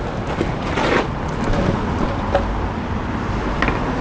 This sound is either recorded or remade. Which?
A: recorded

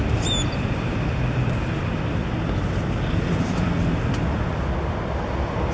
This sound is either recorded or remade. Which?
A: recorded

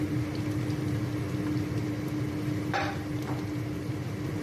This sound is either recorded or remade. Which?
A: recorded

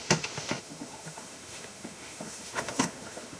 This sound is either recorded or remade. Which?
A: remade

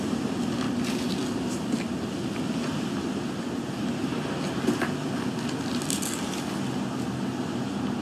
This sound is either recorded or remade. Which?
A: recorded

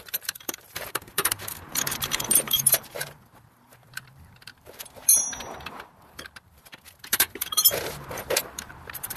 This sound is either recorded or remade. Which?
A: remade